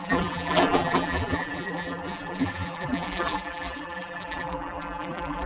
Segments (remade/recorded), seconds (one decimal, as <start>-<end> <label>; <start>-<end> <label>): 0.0-5.5 remade

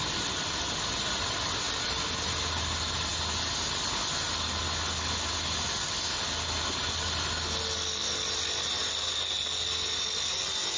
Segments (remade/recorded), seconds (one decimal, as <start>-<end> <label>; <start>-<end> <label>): 0.0-10.8 recorded